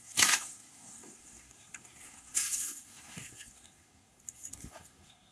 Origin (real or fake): fake